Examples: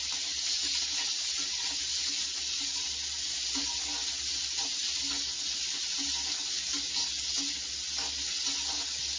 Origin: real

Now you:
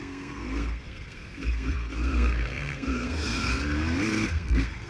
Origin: fake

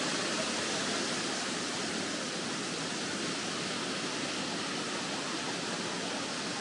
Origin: real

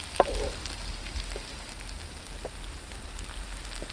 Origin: real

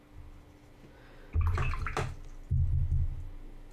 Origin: real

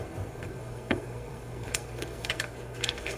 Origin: fake